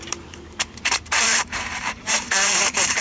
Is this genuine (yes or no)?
no